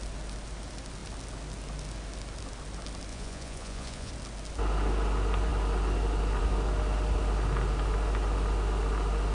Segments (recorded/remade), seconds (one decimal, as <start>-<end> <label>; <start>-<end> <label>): 0.0-3.1 recorded; 3.1-4.1 remade; 4.1-9.3 recorded